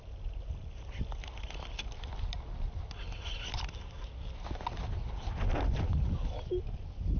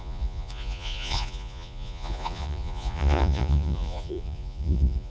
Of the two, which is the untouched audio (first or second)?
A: first